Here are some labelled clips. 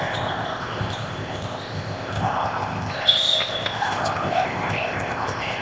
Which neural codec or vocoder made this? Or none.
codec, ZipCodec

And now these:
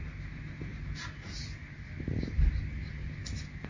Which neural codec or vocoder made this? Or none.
none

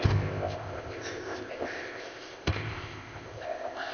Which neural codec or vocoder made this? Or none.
codec, ZipCodec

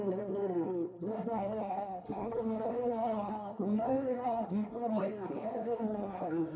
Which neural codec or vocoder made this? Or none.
codec, SNAC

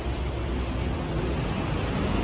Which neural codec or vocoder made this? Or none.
none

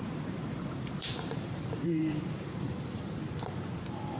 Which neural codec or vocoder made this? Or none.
vocoder, BigVGAN v2